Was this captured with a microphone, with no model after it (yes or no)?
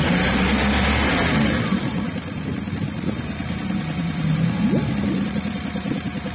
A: yes